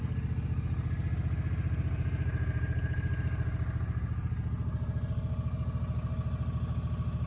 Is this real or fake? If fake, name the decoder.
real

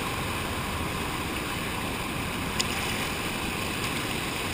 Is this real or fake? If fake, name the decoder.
real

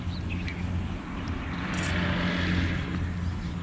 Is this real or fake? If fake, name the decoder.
real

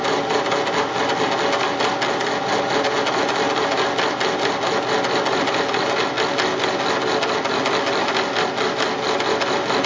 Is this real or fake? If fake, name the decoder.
real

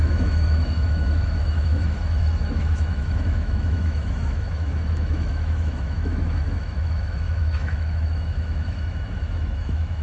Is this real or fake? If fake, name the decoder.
fake, autoencoder, DAC-VAE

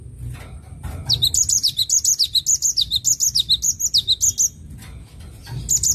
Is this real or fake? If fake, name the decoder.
real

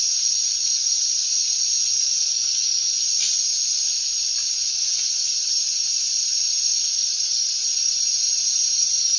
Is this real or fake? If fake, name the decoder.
real